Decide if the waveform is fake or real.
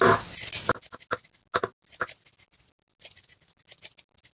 real